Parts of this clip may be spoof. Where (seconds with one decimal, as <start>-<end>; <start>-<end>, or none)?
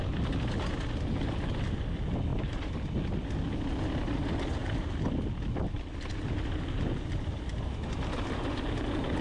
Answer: 2.3-2.9; 4.6-8.4